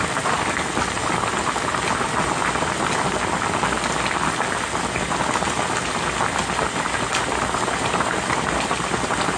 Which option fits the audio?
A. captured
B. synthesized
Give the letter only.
A